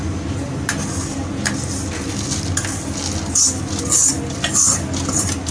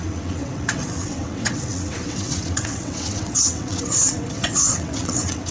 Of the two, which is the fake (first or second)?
second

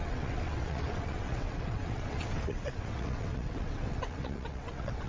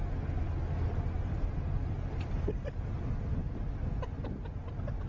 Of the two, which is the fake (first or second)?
first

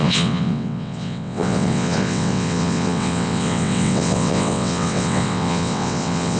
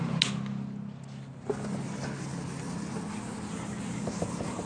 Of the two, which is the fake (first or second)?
first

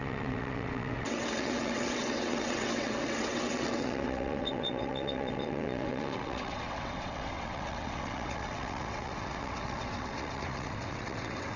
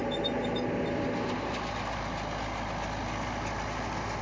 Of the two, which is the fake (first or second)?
first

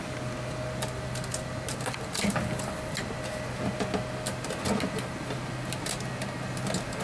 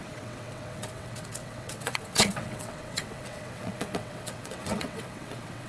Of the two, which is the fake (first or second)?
second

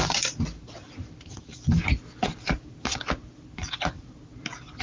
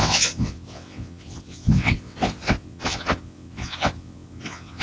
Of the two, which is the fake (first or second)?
second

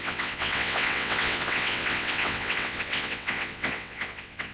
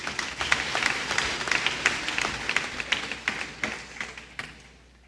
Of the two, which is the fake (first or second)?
first